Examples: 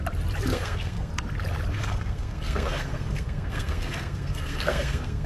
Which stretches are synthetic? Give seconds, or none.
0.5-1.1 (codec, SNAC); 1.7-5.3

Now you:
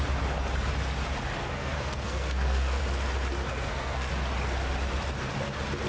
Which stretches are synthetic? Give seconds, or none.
1.4-2.8 (codec, SNAC); 3.5-4.1